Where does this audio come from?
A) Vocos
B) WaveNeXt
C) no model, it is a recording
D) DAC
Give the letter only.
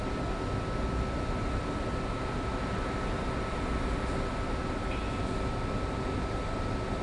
C